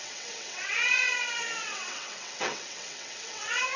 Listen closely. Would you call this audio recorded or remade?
remade